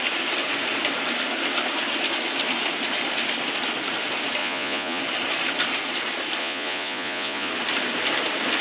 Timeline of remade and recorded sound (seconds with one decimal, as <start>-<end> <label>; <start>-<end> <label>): 0.0-4.4 recorded; 4.4-5.0 remade; 5.0-6.4 recorded; 6.4-7.5 remade; 7.5-8.6 recorded